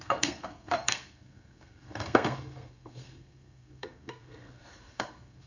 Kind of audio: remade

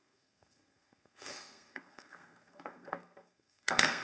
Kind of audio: remade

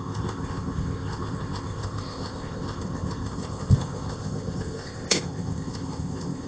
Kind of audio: remade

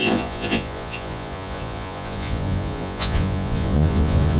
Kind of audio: remade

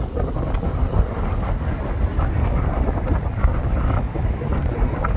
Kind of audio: recorded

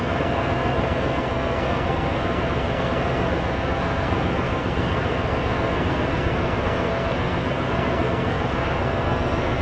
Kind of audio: remade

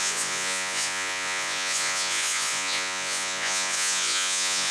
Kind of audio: remade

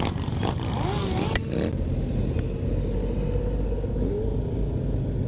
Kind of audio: recorded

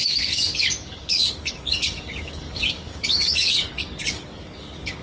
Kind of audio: remade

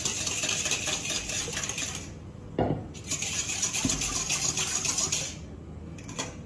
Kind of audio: recorded